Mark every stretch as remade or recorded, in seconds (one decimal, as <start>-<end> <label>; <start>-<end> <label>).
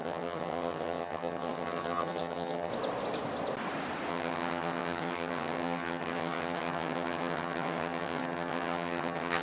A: 0.0-2.7 remade; 2.7-4.1 recorded; 4.1-9.4 remade